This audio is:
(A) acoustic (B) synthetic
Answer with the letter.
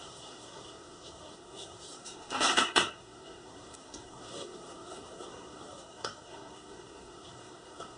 B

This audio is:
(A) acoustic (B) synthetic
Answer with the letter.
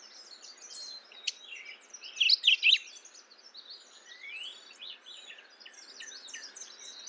A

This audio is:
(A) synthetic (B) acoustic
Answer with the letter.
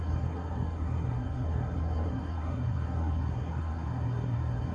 A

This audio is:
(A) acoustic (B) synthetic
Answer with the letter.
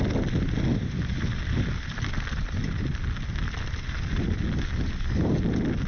A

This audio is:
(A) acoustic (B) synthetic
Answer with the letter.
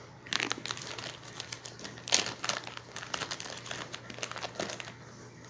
A